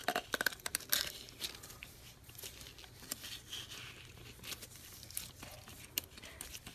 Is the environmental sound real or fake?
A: real